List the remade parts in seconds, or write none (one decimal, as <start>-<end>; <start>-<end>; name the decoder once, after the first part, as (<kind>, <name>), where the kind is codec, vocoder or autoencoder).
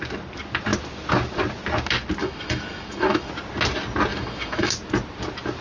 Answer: 2.2-3.3 (autoencoder, DAC-VAE); 4.1-4.7